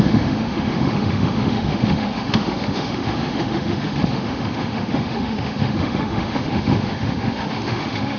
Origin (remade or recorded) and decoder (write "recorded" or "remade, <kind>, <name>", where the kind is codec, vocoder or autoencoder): remade, autoencoder, DAC-VAE